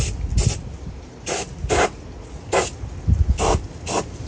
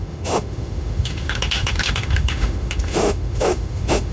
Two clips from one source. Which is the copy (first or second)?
second